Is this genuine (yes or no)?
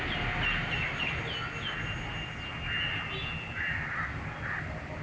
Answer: yes